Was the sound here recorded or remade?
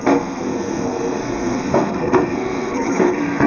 remade